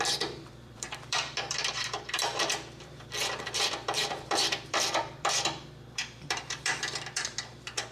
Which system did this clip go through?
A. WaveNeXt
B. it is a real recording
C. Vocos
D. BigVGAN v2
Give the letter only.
D